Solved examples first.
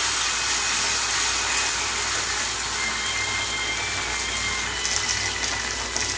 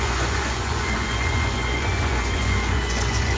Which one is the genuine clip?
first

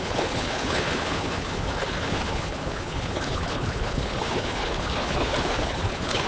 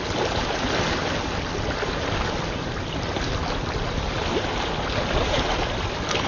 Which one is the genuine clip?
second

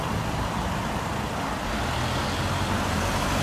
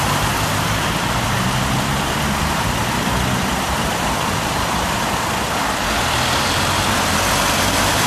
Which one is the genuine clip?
first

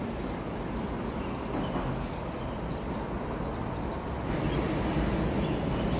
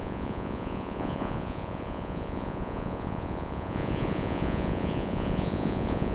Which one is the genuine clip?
first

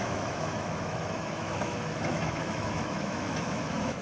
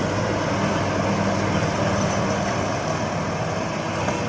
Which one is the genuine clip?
second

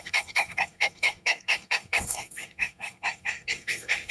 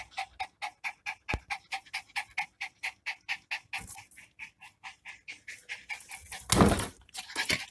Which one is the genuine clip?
second